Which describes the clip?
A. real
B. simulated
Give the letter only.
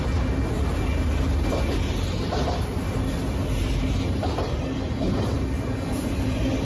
A